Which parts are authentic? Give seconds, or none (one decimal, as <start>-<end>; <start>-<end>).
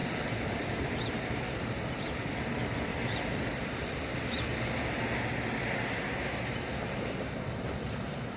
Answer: 4.1-8.4